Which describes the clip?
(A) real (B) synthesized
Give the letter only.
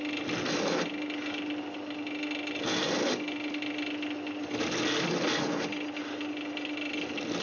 A